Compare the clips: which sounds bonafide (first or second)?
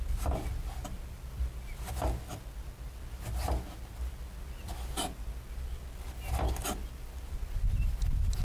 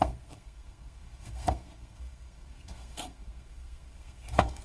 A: first